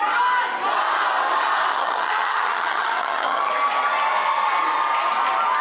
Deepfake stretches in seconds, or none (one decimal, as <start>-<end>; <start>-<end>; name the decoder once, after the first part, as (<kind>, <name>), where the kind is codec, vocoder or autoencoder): 1.7-3.5 (vocoder, HiFi-GAN)